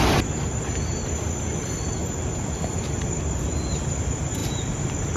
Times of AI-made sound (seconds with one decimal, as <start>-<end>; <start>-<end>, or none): 2.0-3.0; 4.4-5.2